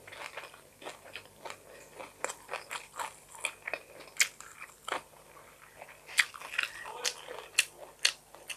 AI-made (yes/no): no